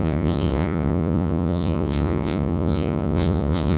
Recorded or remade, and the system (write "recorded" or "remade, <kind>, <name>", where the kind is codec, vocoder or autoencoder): remade, vocoder, Vocos